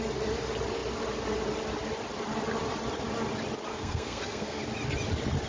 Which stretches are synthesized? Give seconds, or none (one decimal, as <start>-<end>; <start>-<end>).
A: 3.7-4.6